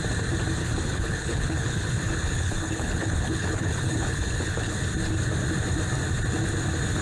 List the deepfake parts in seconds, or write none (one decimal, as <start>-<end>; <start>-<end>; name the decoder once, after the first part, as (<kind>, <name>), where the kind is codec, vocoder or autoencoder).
0.6-4.8 (codec, HILCodec)